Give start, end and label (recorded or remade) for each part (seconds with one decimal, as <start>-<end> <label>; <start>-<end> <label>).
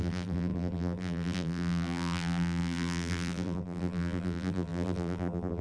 0.0-5.6 remade